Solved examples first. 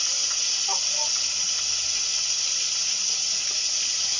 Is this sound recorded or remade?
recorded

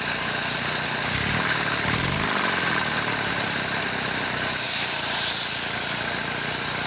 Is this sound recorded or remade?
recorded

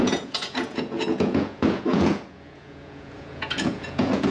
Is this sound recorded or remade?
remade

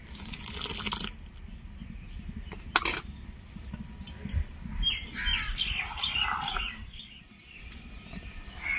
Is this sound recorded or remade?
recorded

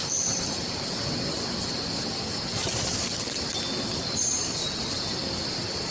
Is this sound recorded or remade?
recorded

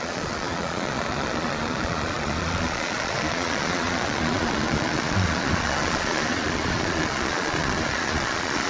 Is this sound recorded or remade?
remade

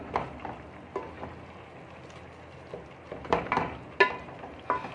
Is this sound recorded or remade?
recorded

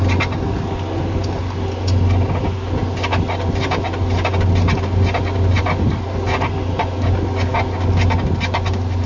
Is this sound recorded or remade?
recorded